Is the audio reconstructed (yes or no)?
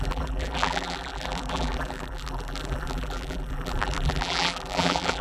yes